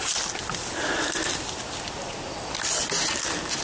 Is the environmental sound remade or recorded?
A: recorded